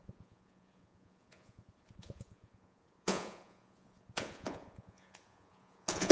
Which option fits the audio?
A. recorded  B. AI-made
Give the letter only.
B